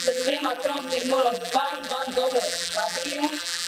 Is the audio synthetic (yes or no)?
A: yes